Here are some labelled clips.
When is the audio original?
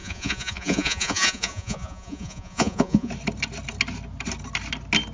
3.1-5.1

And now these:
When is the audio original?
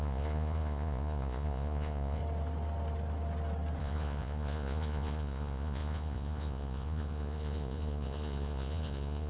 2.2-3.8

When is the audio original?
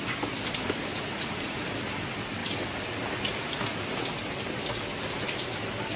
0.0-0.9; 1.6-6.0